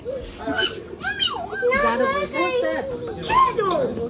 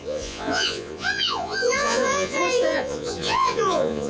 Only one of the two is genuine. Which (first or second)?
first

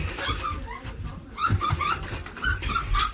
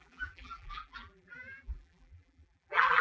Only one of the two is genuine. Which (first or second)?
first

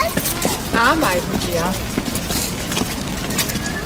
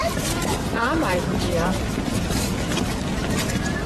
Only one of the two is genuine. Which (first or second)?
first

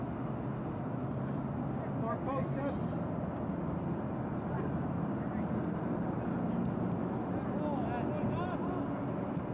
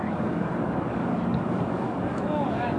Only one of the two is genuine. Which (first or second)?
first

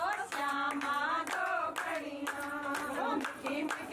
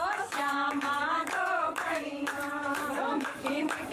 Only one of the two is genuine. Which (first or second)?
first